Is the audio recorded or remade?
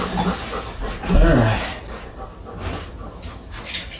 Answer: recorded